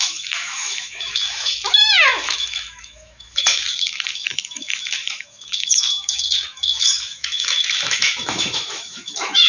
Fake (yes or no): yes